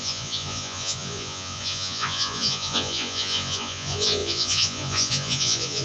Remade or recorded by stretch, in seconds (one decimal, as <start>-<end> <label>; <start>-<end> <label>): 0.0-5.8 remade